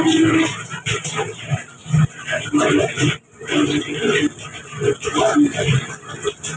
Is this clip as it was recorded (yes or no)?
yes